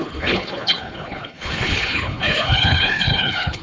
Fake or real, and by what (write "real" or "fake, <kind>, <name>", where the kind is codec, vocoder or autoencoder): fake, codec, HILCodec